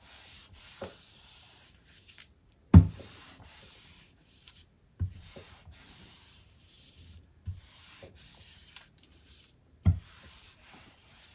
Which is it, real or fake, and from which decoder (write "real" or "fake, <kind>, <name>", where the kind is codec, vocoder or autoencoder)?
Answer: fake, vocoder, BigVGAN v2